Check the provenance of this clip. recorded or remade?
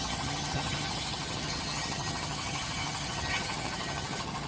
remade